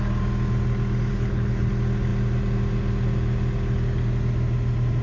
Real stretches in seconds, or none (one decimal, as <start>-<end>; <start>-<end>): 0.0-1.1; 1.7-5.0